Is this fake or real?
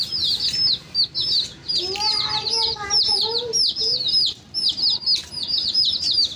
real